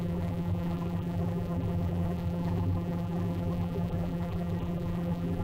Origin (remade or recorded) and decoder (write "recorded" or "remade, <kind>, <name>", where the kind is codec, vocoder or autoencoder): remade, vocoder, BigVGAN v2